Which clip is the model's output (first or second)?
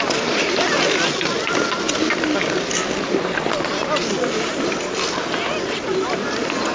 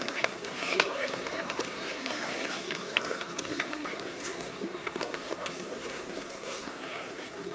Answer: second